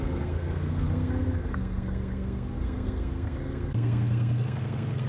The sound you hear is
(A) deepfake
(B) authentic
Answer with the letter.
A